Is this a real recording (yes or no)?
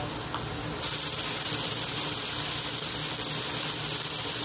yes